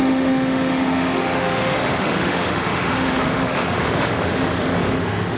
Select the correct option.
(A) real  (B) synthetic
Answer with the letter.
B